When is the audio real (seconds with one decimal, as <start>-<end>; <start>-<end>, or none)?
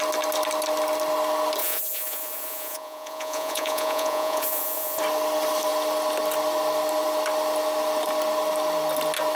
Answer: 0.0-1.6; 5.0-9.4